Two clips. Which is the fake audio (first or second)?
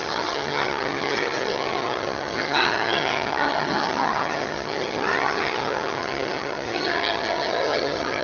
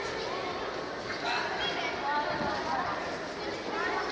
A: first